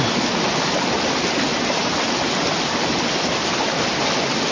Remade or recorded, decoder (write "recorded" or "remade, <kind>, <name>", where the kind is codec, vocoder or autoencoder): recorded